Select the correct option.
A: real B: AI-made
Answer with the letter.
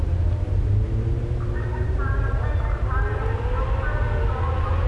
A